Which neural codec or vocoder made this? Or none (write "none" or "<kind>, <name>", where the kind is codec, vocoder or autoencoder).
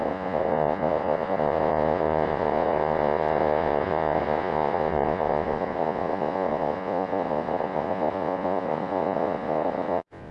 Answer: vocoder, Vocos